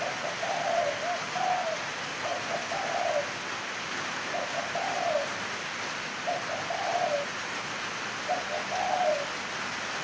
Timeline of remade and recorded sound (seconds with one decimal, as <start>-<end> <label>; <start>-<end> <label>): 0.0-10.0 recorded